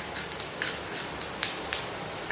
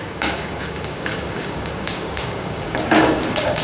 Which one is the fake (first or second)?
second